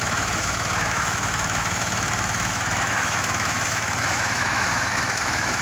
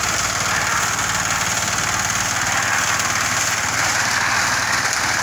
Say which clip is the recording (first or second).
second